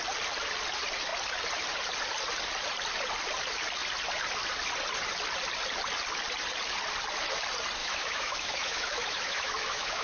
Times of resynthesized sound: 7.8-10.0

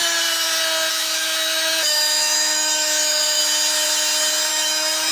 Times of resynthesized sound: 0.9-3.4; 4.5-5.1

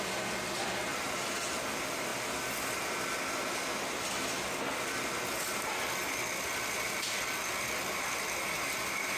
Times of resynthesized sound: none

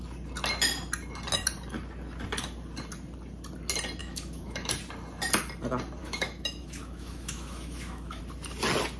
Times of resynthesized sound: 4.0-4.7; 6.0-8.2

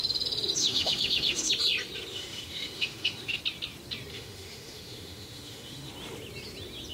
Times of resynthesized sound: 0.6-1.5; 2.1-3.4; 4.1-5.9

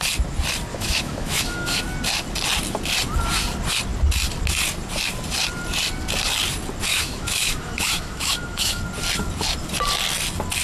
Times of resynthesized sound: 0.7-1.8; 6.9-8.8

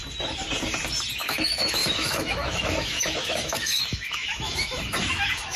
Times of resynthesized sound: 1.2-5.6